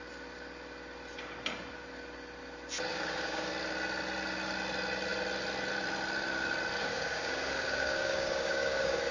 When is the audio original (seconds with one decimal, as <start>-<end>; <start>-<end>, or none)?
0.0-2.9; 3.5-6.9